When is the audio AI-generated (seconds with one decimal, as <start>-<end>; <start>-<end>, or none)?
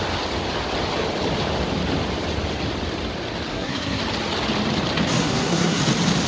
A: 3.5-4.0; 5.2-5.8